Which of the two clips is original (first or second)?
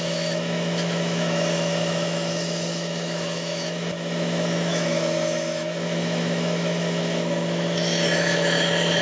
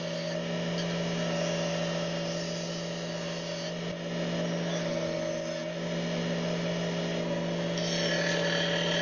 second